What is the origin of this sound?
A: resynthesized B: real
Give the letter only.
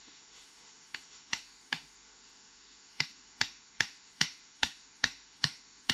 A